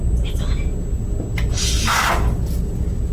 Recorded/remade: recorded